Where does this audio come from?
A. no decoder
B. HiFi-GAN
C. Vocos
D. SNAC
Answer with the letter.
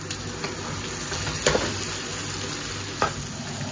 A